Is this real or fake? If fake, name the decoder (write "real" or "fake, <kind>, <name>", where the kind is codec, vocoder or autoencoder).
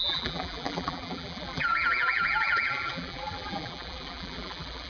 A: fake, vocoder, BigVGAN v2